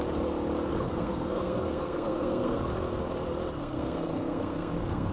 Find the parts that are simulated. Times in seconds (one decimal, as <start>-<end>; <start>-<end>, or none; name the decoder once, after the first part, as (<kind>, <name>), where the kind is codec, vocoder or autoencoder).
0.7-2.6 (codec, SNAC); 3.6-5.1